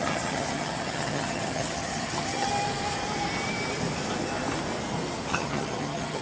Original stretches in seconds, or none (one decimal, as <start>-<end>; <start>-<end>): 2.5-5.3